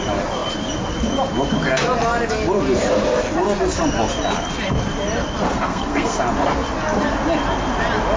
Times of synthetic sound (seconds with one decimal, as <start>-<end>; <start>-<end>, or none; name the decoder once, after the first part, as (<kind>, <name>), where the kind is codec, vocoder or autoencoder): 5.5-6.2 (codec, SNAC)